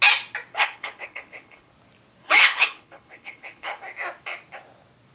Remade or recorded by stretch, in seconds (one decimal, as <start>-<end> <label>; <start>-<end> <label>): 0.0-0.5 recorded; 0.5-1.7 remade; 1.7-2.2 recorded; 2.2-3.8 remade; 3.8-5.1 recorded